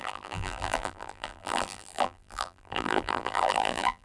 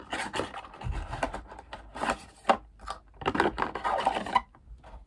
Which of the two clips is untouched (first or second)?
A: second